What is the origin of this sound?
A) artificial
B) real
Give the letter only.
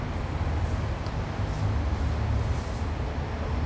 B